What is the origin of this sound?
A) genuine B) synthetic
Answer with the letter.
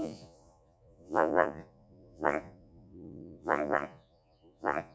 B